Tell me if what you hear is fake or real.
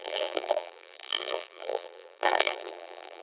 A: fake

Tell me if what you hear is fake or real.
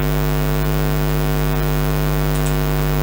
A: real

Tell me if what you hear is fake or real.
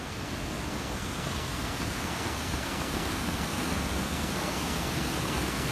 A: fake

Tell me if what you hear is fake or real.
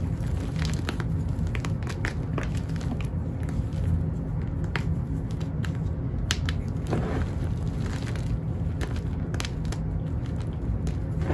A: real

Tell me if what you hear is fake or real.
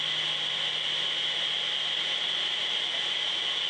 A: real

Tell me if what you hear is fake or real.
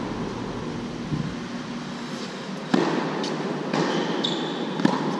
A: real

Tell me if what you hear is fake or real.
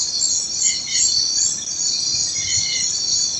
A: real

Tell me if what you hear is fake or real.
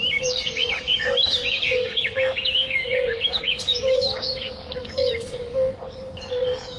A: fake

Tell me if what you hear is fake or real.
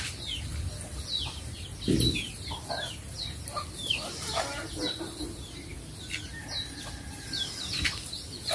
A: real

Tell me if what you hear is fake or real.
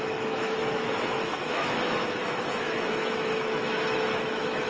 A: fake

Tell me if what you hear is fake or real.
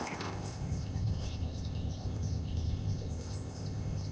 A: fake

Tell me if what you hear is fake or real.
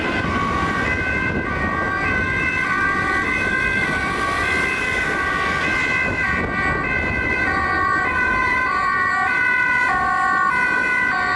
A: real